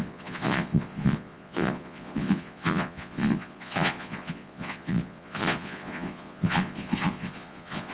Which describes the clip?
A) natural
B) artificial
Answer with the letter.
B